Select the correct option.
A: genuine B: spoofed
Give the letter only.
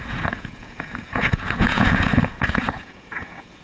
B